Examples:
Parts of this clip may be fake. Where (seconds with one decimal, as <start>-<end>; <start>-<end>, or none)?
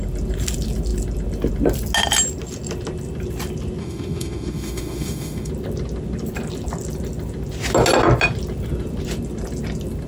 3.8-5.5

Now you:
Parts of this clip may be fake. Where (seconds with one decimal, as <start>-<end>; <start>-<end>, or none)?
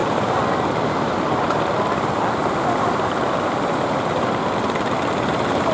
none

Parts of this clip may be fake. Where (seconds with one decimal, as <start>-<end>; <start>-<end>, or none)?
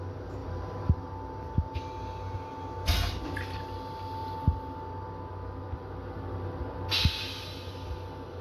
0.4-1.1